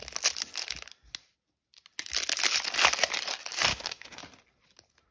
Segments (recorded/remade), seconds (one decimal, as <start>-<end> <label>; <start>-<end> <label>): 0.0-3.7 recorded; 3.7-4.2 remade; 4.2-5.1 recorded